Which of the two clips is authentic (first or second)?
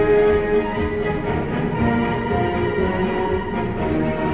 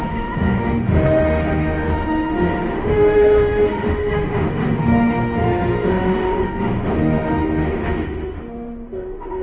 first